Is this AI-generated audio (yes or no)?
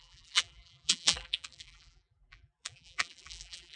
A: yes